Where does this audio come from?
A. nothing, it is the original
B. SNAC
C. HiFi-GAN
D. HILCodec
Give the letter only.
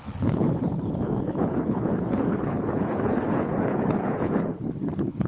D